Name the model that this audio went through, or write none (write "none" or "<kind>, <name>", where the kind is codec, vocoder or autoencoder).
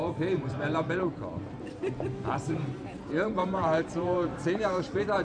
vocoder, BigVGAN v2